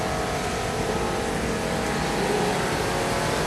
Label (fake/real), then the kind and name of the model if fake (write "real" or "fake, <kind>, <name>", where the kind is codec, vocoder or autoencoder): real